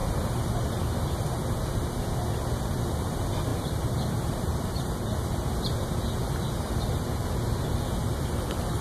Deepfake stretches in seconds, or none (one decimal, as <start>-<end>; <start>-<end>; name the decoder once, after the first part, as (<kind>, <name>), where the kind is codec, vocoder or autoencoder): 0.0-0.5 (vocoder, BigVGAN v2); 3.5-4.9